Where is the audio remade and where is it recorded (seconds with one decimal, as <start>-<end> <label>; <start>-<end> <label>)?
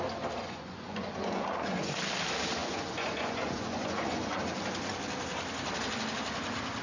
0.0-0.4 recorded; 0.4-2.0 remade; 2.0-2.6 recorded; 2.6-4.4 remade; 4.4-6.8 recorded